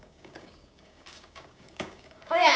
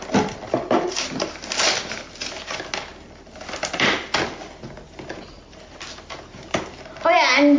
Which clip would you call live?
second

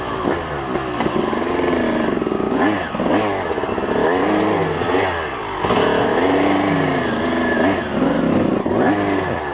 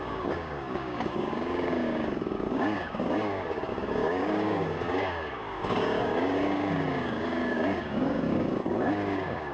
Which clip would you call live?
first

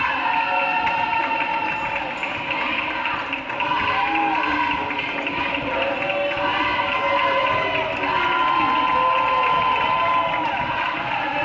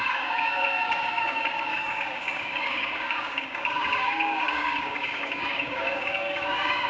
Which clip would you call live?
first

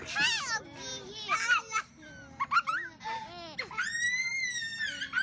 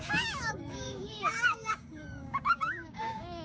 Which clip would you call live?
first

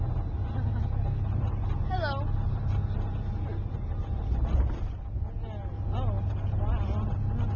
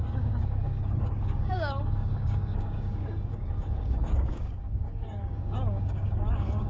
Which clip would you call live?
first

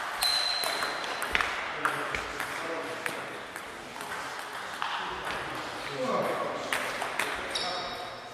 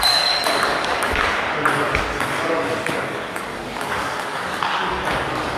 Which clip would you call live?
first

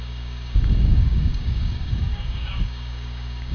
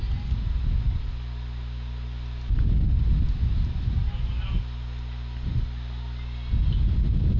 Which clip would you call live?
second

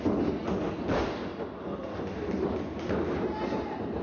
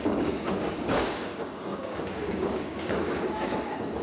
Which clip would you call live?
first